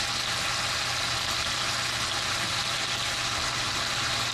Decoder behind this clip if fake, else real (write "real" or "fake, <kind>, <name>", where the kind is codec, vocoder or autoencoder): real